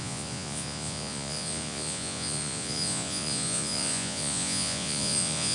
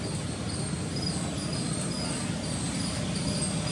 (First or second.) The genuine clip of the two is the second